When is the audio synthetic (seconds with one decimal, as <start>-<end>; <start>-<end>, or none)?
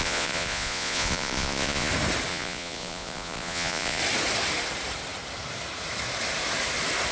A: 0.0-1.9; 2.3-4.0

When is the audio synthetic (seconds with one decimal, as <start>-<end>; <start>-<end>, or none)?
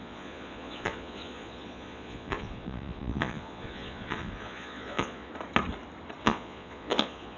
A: 0.0-5.3; 6.2-7.4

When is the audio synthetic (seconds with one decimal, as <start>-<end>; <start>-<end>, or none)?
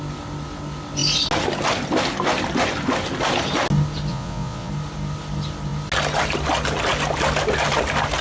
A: 4.1-4.7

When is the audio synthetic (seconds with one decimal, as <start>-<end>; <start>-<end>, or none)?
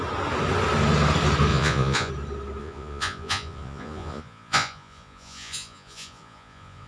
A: 1.5-2.1; 2.6-6.9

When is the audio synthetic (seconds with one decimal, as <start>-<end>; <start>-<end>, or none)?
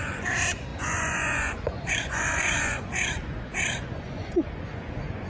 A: 0.0-5.3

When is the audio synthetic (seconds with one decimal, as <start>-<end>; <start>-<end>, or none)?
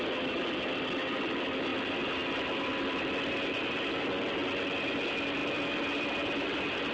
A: none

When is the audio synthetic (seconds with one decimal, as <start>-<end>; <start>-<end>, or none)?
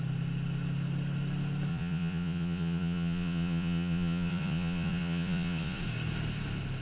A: 1.7-5.8